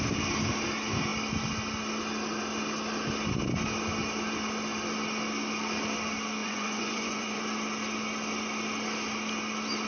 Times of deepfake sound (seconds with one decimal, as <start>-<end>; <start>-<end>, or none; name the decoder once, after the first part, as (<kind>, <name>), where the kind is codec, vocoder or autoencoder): 6.4-7.4 (vocoder, Vocos)

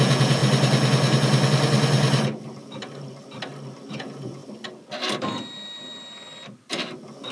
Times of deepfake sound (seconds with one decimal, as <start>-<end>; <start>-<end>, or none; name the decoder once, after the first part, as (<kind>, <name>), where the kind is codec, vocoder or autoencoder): 0.0-0.4 (vocoder, Vocos); 3.9-4.4

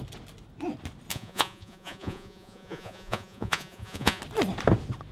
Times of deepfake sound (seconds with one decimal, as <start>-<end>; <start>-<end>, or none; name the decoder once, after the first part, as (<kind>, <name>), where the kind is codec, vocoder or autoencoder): 1.1-4.2 (vocoder, Vocos)

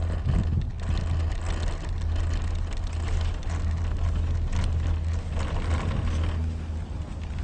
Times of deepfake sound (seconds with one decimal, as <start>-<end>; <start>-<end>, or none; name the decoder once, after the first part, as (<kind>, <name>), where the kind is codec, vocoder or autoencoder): none

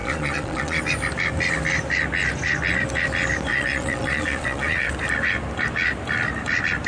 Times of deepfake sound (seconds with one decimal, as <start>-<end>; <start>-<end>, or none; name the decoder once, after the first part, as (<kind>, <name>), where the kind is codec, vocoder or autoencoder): 0.0-0.8 (vocoder, Vocos); 3.5-4.9

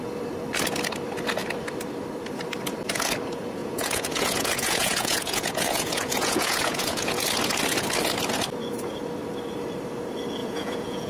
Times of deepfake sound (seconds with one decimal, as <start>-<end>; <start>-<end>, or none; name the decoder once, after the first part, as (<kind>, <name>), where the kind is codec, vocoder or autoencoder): 3.6-7.2 (vocoder, Vocos); 10.4-11.1

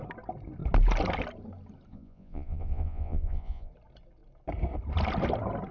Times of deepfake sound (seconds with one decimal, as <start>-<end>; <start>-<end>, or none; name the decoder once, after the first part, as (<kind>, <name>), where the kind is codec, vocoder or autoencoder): 1.9-3.7 (vocoder, Vocos)

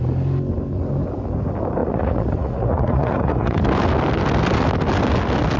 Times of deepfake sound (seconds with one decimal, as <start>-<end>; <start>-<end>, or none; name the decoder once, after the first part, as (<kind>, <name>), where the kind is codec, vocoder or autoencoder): 1.8-3.6 (vocoder, Vocos)